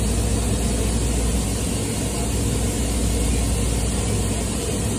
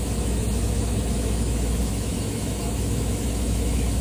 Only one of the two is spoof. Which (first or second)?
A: second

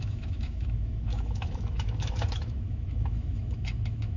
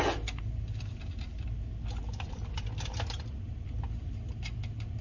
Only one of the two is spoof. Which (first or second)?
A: first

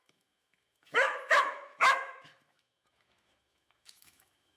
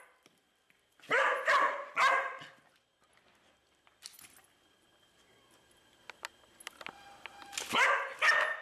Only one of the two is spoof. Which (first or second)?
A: first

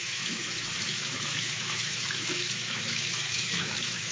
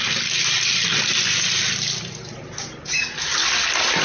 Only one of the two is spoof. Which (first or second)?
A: first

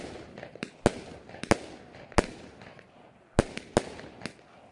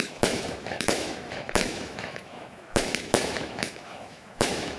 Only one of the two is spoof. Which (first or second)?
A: second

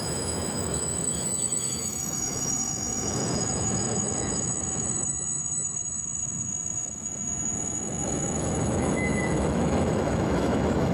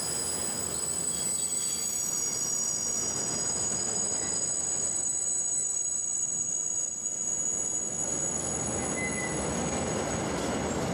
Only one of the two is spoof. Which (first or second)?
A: first